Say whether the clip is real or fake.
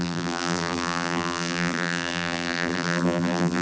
fake